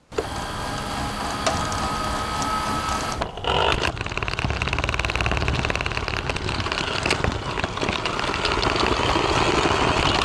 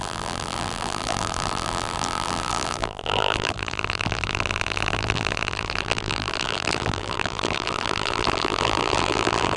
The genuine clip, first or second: first